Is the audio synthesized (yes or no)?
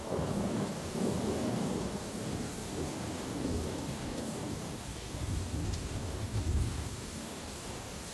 yes